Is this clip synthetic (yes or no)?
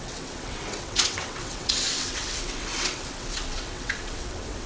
yes